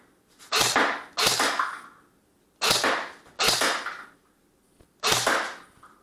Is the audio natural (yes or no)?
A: yes